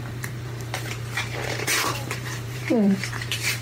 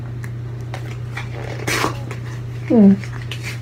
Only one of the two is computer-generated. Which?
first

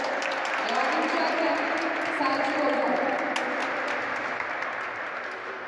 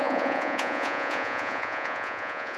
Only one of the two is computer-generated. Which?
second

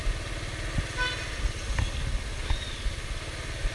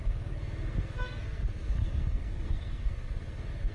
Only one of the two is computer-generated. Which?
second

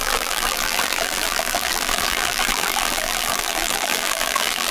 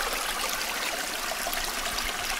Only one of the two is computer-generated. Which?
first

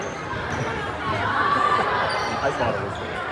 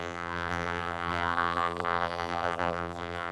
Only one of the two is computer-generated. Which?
second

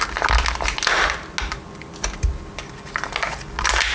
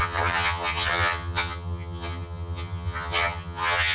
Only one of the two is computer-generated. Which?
second